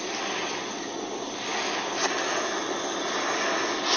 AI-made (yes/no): no